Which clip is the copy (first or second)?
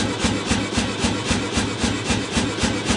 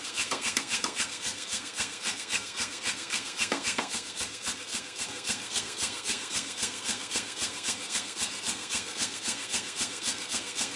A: second